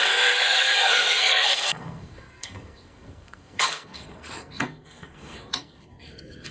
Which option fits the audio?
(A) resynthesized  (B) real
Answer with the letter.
A